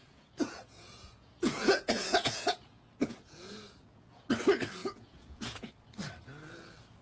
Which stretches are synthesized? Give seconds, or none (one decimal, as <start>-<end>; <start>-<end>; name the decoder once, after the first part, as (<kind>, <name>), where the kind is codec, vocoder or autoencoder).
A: 0.0-4.2 (vocoder, Vocos); 4.8-5.7